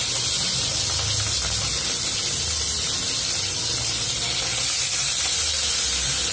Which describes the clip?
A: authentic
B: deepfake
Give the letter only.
A